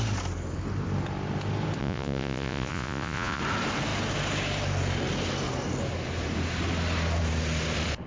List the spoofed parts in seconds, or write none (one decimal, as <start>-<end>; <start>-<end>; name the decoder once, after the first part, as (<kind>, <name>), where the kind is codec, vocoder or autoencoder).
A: 1.8-3.4 (vocoder, Vocos)